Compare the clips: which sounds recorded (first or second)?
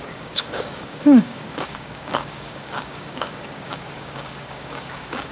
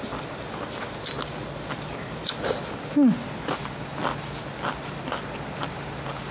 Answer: second